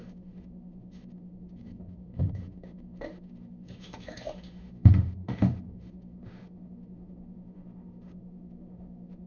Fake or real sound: fake